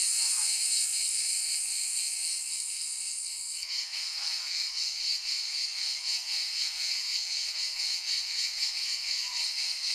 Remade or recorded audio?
remade